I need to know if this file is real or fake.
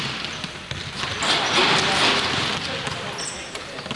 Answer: real